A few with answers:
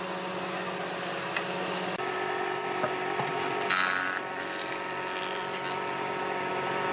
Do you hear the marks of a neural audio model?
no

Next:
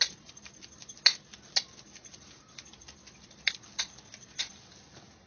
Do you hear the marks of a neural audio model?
no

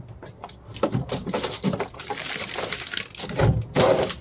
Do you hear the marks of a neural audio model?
no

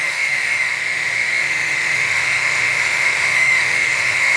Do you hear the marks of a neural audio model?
yes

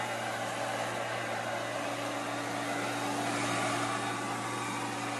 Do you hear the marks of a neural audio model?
no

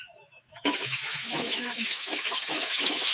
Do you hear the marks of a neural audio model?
yes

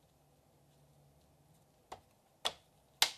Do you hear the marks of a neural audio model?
no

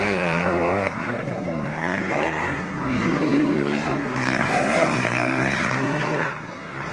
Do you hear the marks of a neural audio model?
yes